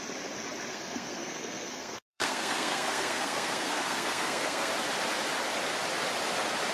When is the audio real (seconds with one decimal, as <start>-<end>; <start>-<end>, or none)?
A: 0.0-0.7; 4.7-6.7